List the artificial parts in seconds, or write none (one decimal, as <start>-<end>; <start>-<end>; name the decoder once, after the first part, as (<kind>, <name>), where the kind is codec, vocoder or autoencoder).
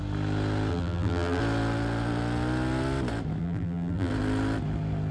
0.7-1.4 (vocoder, BigVGAN v2); 3.4-4.1